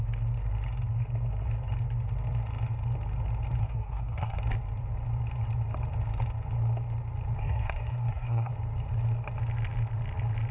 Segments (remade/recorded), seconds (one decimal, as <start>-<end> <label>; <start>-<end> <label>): 0.0-3.6 recorded; 3.6-4.4 remade; 4.4-7.4 recorded; 7.4-8.5 remade; 8.5-10.5 recorded